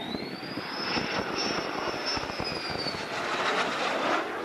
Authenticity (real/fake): real